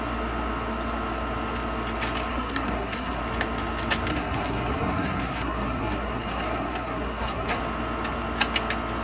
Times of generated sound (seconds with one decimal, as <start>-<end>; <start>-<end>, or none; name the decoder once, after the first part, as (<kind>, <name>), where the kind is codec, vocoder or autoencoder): 2.3-3.2 (codec, SNAC); 4.1-7.6